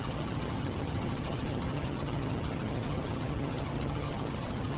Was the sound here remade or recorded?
remade